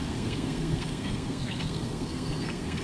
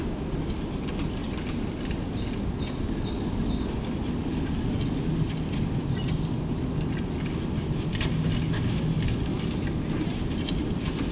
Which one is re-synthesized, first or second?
first